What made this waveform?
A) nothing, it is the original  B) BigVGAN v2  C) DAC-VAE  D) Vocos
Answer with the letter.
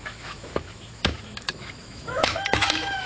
C